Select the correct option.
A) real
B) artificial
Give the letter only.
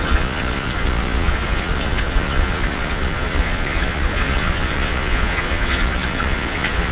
B